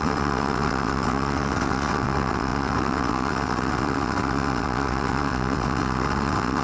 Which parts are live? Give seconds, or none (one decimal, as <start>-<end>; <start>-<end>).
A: none

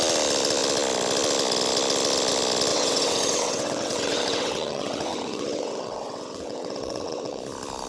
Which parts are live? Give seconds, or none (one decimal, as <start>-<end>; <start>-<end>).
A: 0.0-2.7; 7.4-7.9

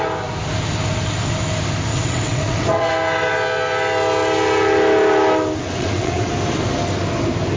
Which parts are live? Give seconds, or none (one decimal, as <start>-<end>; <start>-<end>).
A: 0.0-1.9; 2.9-5.6; 6.3-7.6

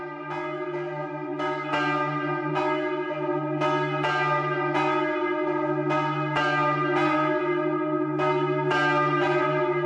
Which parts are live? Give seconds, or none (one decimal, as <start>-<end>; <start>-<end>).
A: 0.0-9.9

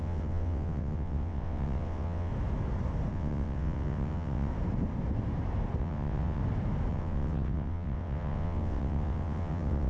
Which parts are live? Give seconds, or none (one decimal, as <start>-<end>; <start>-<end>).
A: 2.3-3.1; 4.5-5.8; 6.4-6.9

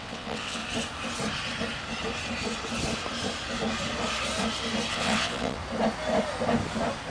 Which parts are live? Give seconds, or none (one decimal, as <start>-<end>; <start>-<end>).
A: 0.6-4.9; 5.6-7.1